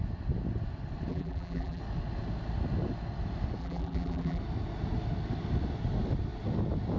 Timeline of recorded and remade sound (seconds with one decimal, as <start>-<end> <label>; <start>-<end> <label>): 0.0-1.1 recorded; 1.1-1.8 remade; 1.8-3.6 recorded; 3.6-4.4 remade; 4.4-7.0 recorded